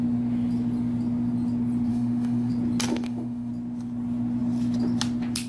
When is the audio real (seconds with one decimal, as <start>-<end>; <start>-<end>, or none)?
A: 0.0-1.9; 2.5-2.9; 3.5-5.5